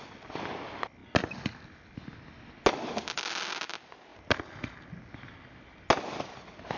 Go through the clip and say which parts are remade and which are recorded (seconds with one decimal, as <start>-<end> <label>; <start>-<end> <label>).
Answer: 0.0-6.8 recorded